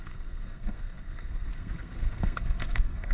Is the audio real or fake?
fake